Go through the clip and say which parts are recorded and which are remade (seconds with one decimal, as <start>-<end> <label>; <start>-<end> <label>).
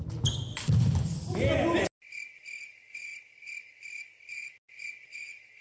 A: 0.0-4.3 recorded; 4.3-5.6 remade